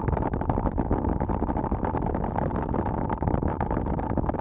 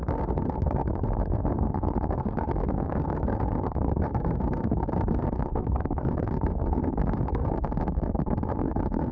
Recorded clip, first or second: first